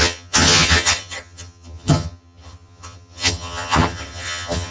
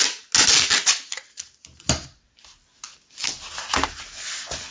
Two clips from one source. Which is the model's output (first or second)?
first